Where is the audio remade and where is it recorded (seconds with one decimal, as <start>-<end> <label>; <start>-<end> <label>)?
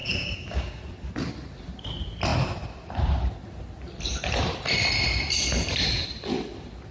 0.0-0.8 remade; 0.8-6.9 recorded